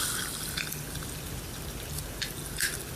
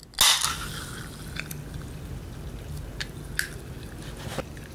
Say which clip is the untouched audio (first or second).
second